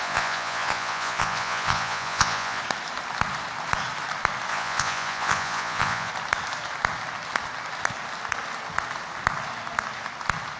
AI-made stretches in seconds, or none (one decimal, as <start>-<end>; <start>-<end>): 0.0-2.6; 4.5-6.1